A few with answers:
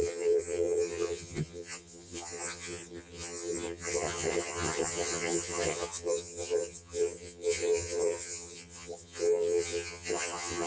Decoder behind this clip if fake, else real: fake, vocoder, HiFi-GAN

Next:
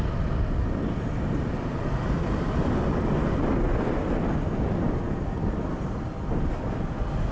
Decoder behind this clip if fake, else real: real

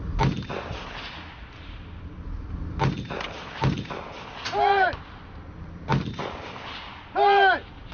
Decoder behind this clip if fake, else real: real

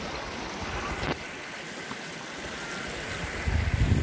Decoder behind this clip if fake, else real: real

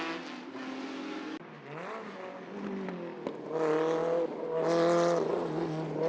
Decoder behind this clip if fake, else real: real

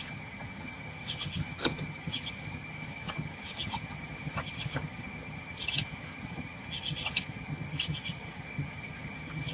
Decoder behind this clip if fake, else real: fake, vocoder, HiFi-GAN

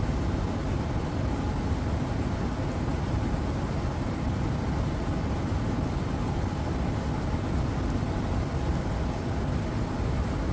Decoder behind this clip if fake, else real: real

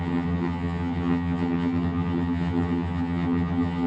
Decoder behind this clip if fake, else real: fake, vocoder, HiFi-GAN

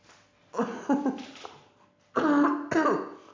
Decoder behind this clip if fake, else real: real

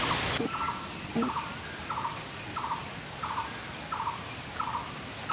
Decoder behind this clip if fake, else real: real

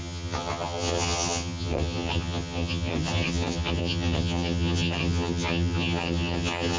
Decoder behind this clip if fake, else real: fake, vocoder, HiFi-GAN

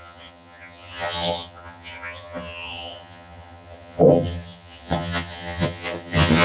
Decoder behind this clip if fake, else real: fake, vocoder, HiFi-GAN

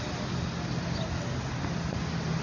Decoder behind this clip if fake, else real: real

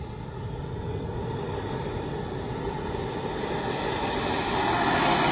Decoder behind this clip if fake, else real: real